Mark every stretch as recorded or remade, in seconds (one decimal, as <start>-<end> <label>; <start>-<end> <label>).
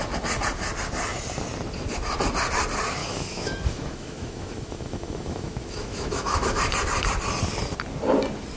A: 0.0-3.0 recorded; 3.0-6.6 remade; 6.6-8.6 recorded